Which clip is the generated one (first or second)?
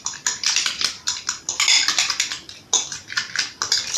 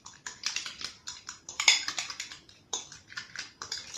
second